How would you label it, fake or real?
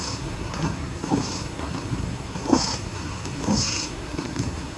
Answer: fake